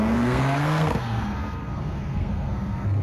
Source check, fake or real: fake